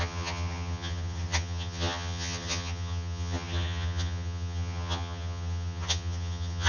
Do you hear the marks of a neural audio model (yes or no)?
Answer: yes